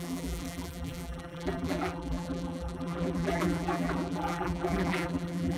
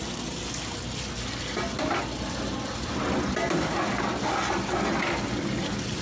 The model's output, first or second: first